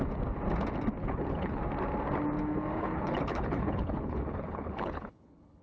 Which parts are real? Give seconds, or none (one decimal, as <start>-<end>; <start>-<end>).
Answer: 0.0-1.0; 1.6-2.8